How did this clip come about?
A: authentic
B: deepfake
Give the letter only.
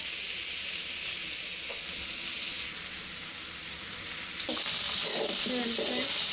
A